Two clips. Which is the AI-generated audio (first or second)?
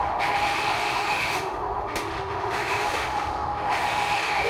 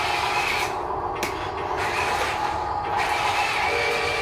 first